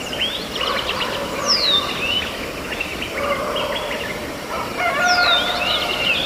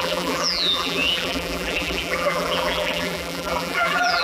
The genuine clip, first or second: first